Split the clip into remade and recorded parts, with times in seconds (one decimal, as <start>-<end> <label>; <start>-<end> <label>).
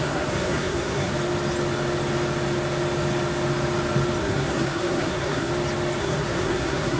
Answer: 0.0-1.1 remade; 1.1-4.2 recorded; 4.2-5.5 remade; 5.5-6.0 recorded; 6.0-7.0 remade